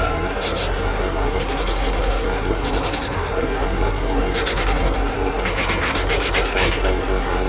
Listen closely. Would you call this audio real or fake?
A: fake